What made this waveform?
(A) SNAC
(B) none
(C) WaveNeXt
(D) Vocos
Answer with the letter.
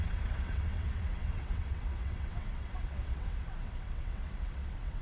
C